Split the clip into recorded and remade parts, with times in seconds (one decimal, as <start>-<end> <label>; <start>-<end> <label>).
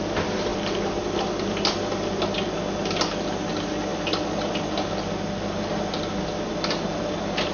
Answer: 0.0-7.5 recorded